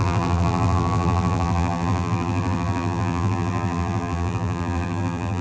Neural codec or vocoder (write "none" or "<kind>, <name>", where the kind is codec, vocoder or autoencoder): vocoder, BigVGAN v2